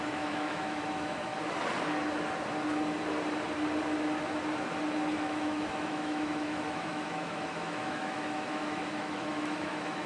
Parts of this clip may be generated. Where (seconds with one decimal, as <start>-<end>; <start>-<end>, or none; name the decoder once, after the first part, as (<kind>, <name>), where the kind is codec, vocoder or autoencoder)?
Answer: 0.0-1.3 (autoencoder, DAC-VAE); 5.2-10.1